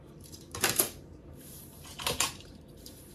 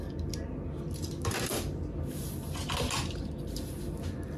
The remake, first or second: first